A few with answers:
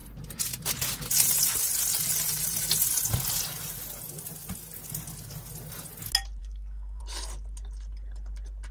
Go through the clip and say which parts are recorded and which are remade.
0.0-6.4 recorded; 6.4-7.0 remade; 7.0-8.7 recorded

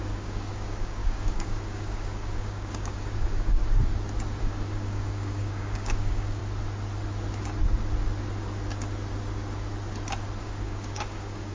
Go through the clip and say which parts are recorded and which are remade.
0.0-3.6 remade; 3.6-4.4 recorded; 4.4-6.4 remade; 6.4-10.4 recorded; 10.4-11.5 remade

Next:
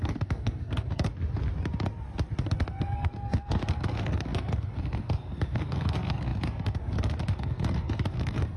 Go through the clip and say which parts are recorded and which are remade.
0.0-1.1 remade; 1.1-2.4 recorded; 2.4-8.6 remade